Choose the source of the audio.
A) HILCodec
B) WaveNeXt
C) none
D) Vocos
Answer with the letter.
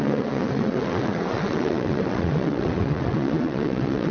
B